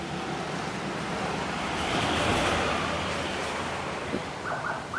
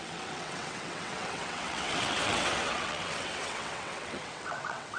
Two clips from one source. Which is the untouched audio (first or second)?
first